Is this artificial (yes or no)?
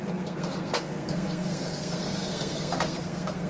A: yes